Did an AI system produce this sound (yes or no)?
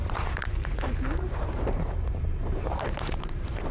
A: yes